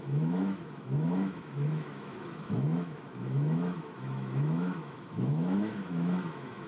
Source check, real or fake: fake